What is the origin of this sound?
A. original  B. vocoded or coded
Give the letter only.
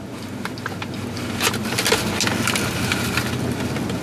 A